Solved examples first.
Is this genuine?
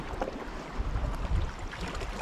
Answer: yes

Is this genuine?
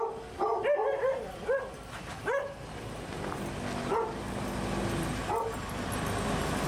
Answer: yes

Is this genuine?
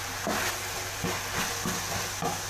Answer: yes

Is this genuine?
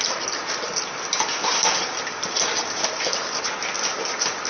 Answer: yes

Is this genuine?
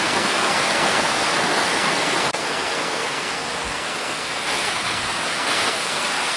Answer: no